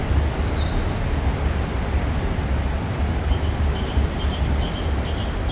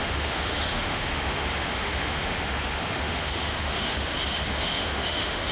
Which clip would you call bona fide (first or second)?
first